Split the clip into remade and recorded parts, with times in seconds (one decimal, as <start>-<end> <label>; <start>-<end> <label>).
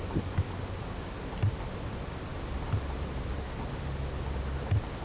0.0-5.0 recorded